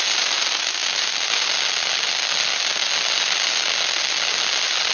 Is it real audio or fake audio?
real